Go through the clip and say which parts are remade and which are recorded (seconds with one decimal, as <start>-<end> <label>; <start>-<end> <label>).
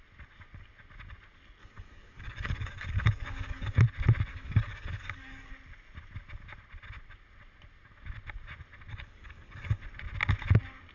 0.0-1.6 recorded; 1.6-3.8 remade; 3.8-4.3 recorded; 4.3-5.5 remade; 5.5-8.9 recorded; 8.9-9.8 remade; 9.8-10.9 recorded